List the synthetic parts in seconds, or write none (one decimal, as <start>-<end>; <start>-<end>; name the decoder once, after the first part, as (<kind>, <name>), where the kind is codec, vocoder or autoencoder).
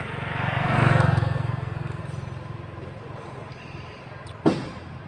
0.0-2.0 (codec, SNAC)